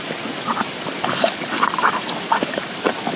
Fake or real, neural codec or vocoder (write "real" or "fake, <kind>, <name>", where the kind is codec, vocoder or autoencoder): real